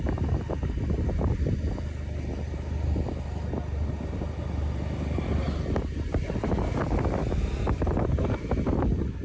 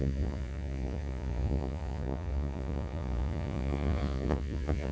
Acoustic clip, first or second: first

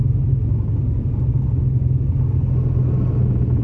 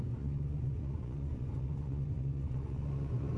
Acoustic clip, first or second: first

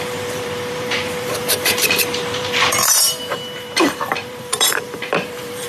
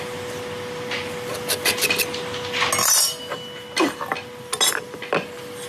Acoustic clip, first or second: second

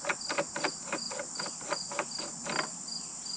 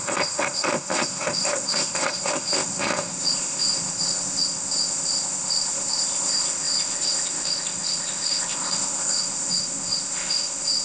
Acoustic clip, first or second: first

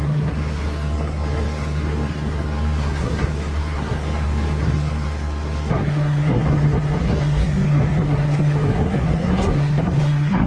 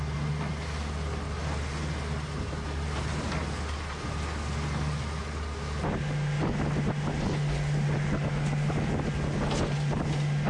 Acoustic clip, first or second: second